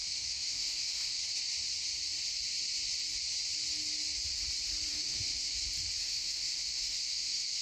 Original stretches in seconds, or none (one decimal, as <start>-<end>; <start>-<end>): 1.2-4.9; 5.6-6.0